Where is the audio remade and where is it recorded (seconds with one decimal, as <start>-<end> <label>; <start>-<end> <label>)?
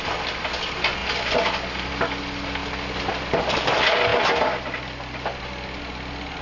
0.0-6.4 recorded